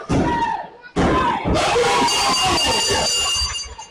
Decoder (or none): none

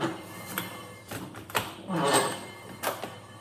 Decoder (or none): vocoder, BigVGAN v2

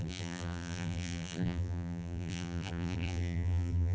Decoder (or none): vocoder, BigVGAN v2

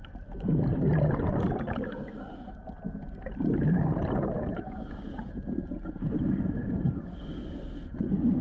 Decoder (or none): vocoder, BigVGAN v2